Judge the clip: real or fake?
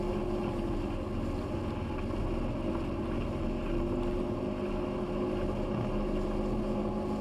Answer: real